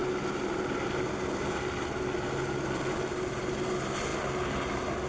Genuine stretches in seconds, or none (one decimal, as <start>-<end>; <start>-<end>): 0.0-5.1